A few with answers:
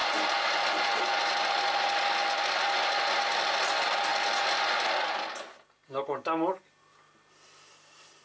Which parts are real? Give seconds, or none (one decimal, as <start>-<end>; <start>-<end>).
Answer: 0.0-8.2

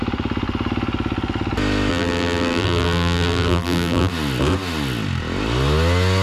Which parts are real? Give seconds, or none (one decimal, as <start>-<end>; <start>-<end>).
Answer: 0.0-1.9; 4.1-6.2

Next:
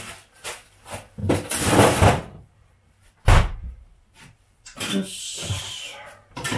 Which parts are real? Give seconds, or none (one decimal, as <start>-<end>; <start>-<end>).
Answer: none

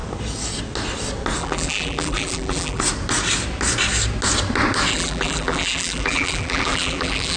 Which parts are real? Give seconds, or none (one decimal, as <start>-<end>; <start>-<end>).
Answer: 0.0-1.4; 2.8-4.9